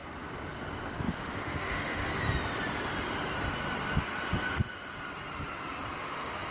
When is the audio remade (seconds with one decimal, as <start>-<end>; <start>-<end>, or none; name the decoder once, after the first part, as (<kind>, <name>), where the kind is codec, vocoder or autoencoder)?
1.1-2.1 (autoencoder, DAC-VAE); 6.0-6.5